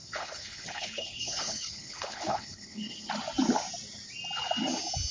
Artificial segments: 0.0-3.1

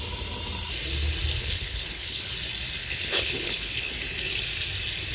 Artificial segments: 1.4-2.3; 2.8-3.9

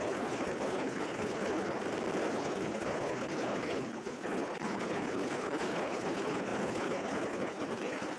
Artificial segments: 0.0-1.8; 2.3-8.2

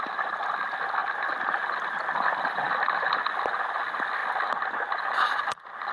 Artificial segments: none

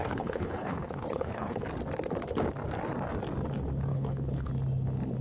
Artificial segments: 0.0-1.6; 3.9-4.5

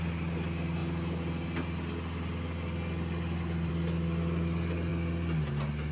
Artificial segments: none